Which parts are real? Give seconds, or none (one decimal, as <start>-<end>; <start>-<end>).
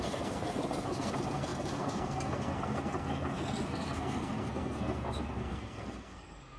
none